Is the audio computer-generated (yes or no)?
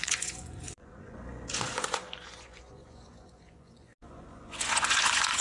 yes